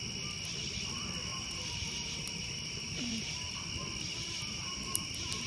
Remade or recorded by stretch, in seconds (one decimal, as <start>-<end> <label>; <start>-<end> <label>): 0.0-1.3 recorded; 1.3-3.6 remade; 3.6-4.1 recorded; 4.1-5.5 remade